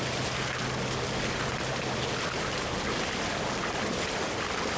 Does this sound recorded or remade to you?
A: recorded